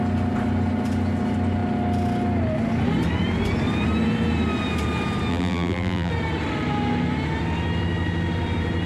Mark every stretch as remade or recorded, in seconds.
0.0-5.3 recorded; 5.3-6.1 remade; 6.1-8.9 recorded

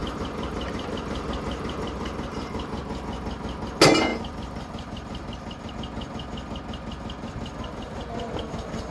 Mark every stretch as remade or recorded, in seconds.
0.0-2.8 remade; 2.8-4.1 recorded; 4.1-5.7 remade; 5.7-8.9 recorded

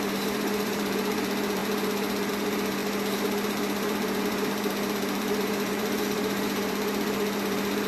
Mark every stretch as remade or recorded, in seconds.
0.0-7.9 remade

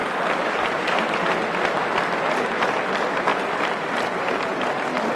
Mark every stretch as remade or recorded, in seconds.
0.0-3.3 recorded; 3.3-4.2 remade; 4.2-5.2 recorded

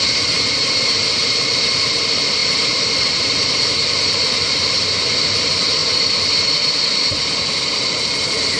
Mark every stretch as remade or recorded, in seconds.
0.0-8.6 remade

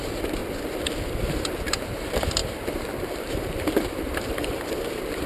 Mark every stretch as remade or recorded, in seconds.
0.0-0.4 remade; 0.4-1.2 recorded; 1.2-5.3 remade

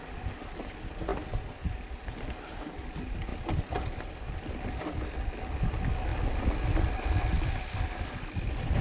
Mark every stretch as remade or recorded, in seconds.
0.0-8.8 recorded

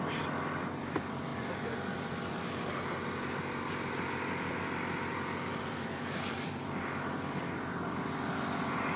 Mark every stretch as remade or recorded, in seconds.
0.0-1.3 recorded; 1.3-2.4 remade; 2.4-5.5 recorded; 5.5-6.8 remade; 6.8-9.0 recorded